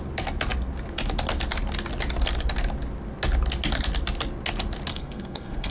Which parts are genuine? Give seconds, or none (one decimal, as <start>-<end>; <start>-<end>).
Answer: 0.0-4.9